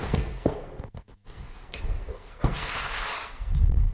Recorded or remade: remade